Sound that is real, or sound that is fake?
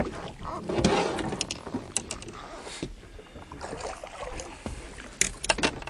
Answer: real